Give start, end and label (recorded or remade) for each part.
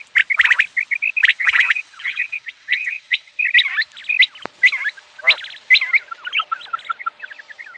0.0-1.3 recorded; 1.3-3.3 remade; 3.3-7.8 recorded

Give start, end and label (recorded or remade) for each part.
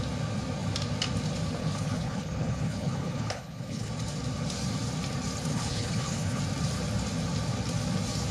0.0-1.6 recorded; 1.6-3.9 remade; 3.9-5.5 recorded; 5.5-6.4 remade; 6.4-8.3 recorded